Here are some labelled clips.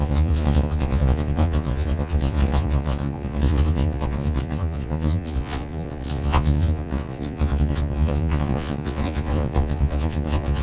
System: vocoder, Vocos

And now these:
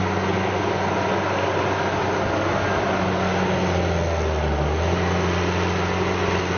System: none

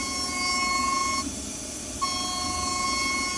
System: none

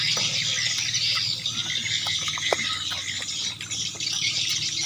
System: none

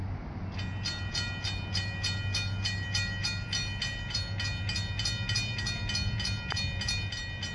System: none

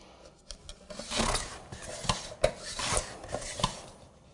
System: none